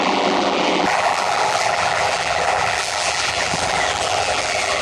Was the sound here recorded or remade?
remade